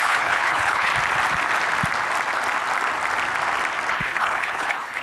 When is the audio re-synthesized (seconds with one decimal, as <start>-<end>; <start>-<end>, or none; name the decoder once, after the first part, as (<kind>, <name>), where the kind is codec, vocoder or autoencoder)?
0.0-0.9 (codec, HILCodec); 3.9-5.0